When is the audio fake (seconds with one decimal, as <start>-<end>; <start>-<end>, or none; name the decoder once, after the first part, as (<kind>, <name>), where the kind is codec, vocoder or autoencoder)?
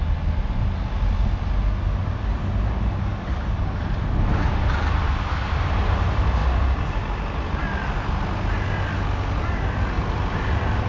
none